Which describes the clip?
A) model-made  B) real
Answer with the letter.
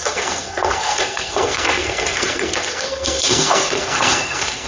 A